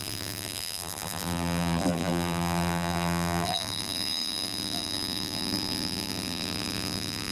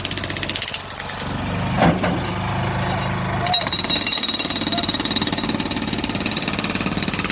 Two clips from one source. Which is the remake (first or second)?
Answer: first